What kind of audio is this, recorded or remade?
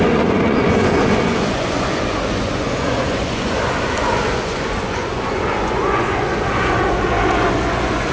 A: remade